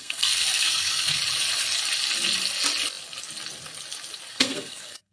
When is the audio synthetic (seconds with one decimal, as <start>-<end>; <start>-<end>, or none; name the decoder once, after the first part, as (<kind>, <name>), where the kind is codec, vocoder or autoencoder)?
0.0-1.2 (codec, SNAC); 4.3-5.1